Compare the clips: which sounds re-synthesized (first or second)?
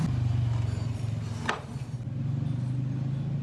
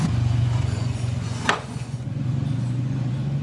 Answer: second